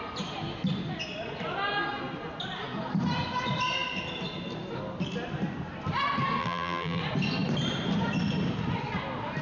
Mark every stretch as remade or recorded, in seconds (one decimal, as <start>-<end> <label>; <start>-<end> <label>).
0.0-6.4 recorded; 6.4-7.0 remade; 7.0-9.4 recorded